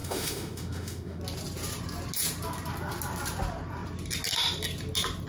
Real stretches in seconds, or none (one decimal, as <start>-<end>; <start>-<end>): 1.2-5.3